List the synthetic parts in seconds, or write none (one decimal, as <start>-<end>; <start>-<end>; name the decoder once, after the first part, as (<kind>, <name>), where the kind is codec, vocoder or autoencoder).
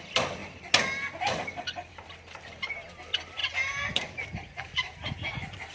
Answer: 3.4-4.2 (vocoder, BigVGAN v2)